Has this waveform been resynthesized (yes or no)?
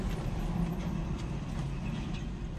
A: no